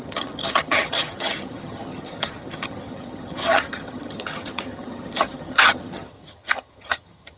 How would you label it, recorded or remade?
remade